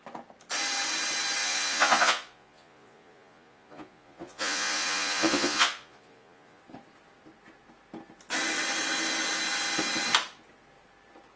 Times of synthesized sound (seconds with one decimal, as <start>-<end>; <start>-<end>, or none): 1.4-6.6

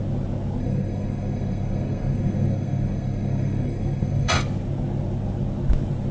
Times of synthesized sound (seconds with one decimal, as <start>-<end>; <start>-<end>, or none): 0.6-4.3